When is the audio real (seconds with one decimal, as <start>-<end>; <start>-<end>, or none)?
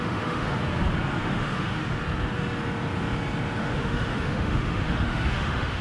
0.6-1.2; 2.0-3.6